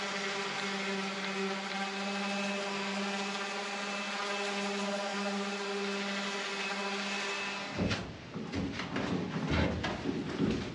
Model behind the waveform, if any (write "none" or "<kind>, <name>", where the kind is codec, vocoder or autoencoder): none